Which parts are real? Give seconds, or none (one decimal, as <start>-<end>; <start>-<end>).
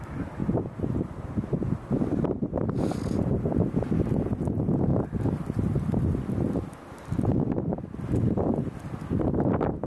0.0-4.9; 9.5-9.9